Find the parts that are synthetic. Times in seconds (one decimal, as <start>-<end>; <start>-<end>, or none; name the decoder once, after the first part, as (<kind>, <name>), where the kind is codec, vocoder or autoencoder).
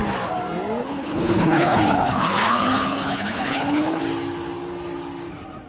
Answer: 0.8-4.0 (codec, HILCodec)